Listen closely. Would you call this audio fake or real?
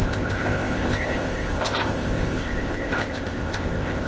fake